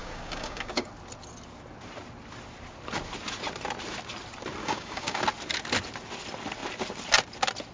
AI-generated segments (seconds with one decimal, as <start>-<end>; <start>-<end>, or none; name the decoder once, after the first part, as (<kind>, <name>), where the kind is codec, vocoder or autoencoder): 0.0-0.9 (codec, DAC); 4.6-5.2